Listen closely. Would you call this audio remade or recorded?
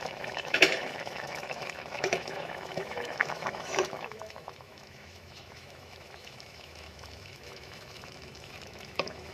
remade